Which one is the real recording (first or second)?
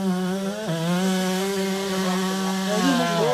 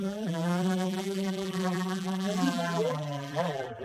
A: first